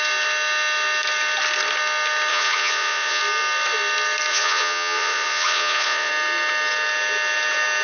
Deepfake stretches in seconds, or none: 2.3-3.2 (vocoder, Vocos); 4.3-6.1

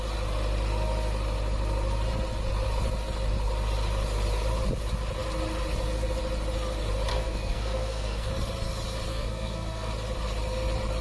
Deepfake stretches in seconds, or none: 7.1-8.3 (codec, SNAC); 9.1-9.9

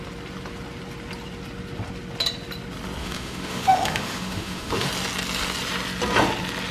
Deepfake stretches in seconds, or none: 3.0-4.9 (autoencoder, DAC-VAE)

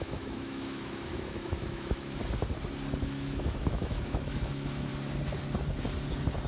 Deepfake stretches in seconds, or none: 0.0-2.2 (autoencoder, DAC-VAE); 3.0-4.9